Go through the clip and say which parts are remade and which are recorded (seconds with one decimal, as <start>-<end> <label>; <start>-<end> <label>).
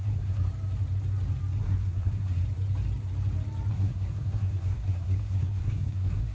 0.0-0.4 remade; 0.4-1.6 recorded; 1.6-2.4 remade; 2.4-3.7 recorded; 3.7-6.3 remade